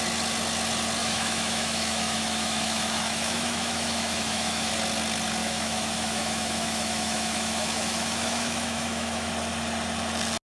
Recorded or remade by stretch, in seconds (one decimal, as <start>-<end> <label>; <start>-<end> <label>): 0.0-1.0 recorded; 1.0-4.7 remade; 4.7-5.4 recorded; 5.4-9.3 remade; 9.3-10.4 recorded